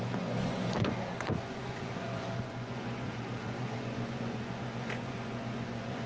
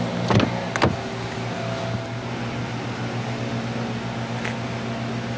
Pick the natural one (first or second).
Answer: second